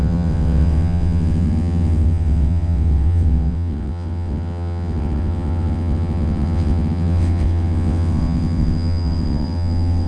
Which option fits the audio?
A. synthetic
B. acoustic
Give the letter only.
A